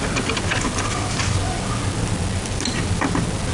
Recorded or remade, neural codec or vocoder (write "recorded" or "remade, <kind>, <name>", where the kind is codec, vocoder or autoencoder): recorded